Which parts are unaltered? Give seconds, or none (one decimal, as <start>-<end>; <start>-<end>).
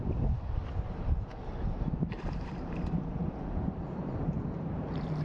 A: none